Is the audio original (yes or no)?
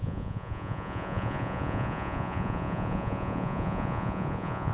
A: no